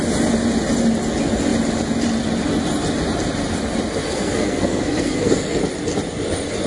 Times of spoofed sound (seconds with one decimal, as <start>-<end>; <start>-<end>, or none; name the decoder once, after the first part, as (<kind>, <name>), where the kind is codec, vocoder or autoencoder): 4.0-5.6 (codec, SNAC)